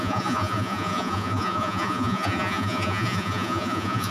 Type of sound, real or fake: fake